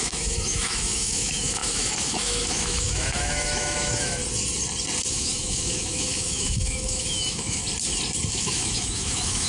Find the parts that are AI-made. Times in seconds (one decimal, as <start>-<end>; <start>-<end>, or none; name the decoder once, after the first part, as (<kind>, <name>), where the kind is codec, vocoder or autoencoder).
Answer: 0.0-4.2 (autoencoder, DAC-VAE); 5.1-7.6; 8.3-9.5